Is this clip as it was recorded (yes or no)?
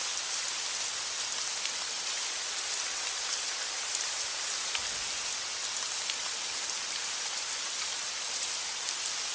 yes